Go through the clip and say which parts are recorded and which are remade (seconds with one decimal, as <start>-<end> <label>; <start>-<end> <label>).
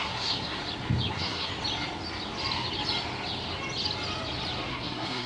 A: 0.0-0.6 remade; 0.6-1.1 recorded; 1.1-1.5 remade; 1.5-4.7 recorded; 4.7-5.3 remade